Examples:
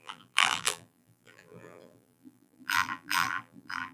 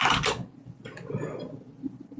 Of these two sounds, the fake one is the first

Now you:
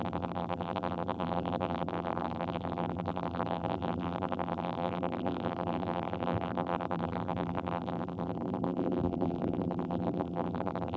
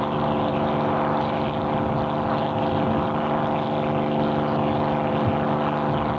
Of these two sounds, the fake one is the first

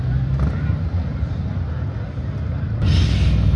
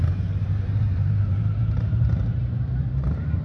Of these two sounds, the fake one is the second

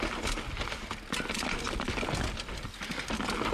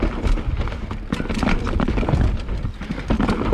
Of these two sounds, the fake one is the second